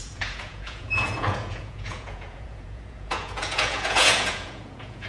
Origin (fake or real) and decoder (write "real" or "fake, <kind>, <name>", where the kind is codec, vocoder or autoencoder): fake, vocoder, Vocos